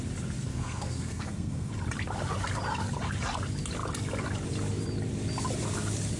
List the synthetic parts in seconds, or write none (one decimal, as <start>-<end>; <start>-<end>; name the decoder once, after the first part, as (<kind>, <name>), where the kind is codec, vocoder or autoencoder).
0.5-1.7 (codec, SNAC)